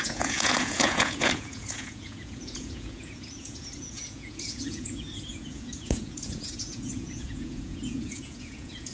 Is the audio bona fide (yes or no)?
no